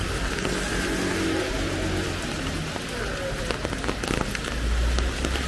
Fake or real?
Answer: real